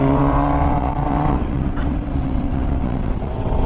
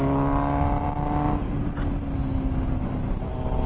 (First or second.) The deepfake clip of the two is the first